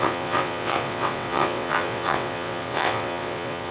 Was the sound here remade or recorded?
remade